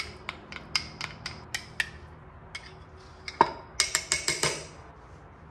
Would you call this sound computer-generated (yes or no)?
no